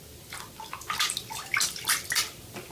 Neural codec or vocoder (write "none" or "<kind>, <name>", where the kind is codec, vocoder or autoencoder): none